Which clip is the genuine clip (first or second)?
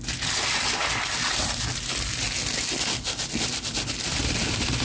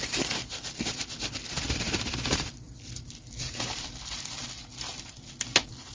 first